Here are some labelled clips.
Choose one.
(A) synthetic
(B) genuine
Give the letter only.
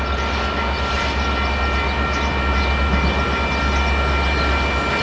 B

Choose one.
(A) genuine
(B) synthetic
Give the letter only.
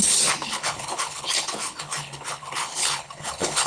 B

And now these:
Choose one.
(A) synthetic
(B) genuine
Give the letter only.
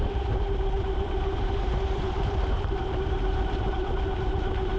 A